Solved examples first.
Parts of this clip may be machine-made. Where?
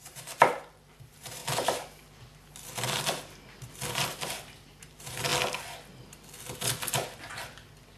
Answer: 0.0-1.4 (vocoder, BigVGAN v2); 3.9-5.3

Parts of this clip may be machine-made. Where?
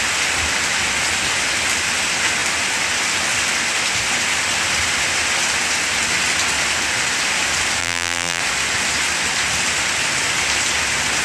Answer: 7.8-8.4 (vocoder, BigVGAN v2)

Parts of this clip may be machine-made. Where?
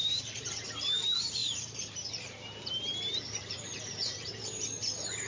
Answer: 0.0-0.7 (vocoder, BigVGAN v2); 1.4-4.4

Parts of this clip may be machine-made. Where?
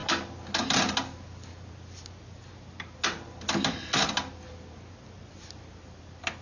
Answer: none